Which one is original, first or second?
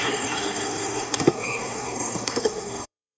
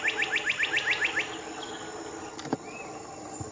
second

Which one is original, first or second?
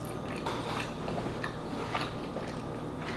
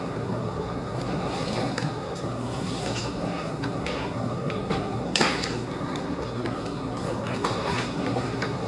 first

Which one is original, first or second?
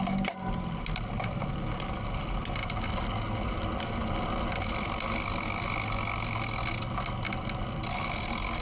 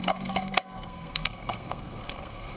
first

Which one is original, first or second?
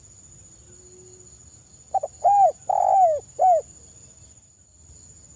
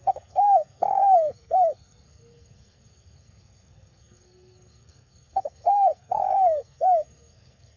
first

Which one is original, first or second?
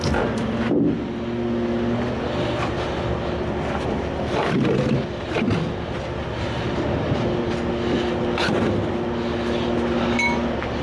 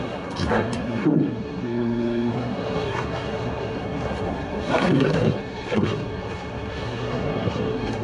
first